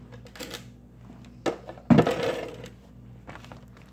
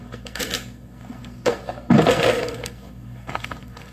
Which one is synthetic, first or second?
second